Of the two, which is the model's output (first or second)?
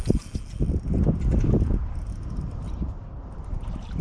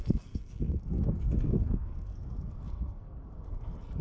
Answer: second